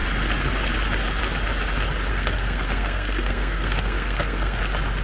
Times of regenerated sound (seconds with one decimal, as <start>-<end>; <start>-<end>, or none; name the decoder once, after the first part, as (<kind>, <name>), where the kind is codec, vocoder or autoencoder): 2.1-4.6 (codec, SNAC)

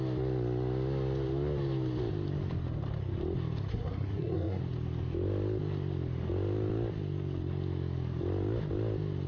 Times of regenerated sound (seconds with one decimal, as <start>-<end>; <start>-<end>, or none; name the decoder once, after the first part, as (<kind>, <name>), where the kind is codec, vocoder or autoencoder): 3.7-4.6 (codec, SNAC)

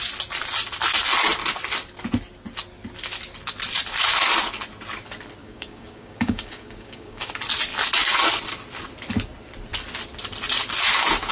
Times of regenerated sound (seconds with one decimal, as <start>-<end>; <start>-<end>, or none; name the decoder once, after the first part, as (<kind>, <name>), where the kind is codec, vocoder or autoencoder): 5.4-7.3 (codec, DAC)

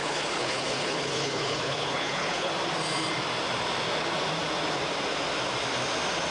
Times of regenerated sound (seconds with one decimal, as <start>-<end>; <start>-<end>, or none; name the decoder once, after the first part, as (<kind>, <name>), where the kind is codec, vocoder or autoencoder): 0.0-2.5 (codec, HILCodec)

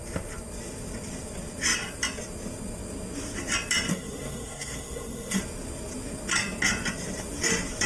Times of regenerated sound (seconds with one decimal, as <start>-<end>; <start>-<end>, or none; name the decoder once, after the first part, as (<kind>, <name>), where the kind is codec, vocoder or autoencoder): 3.9-5.4 (codec, SNAC)

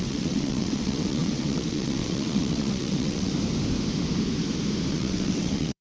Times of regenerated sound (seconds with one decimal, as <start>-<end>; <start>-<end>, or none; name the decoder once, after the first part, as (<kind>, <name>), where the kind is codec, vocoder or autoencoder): 0.0-3.3 (vocoder, WaveNeXt); 4.9-5.8